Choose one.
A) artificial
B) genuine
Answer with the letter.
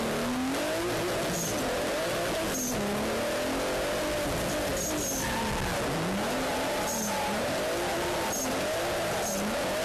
B